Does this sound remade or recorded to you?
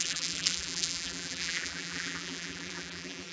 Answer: remade